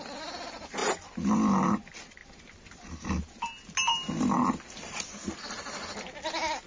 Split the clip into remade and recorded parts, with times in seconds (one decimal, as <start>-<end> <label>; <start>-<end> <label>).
0.0-6.7 recorded